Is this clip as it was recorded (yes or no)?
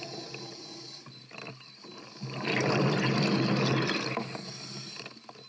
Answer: yes